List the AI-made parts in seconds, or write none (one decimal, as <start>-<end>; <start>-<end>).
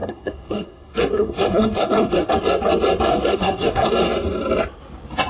0.0-2.3; 3.1-3.9